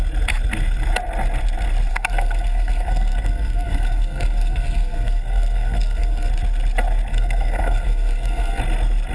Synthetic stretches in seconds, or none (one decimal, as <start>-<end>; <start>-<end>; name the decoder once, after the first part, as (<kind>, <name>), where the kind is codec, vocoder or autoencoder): 1.9-6.3 (codec, SNAC); 7.1-8.6